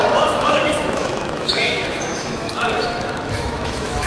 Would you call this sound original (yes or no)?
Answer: no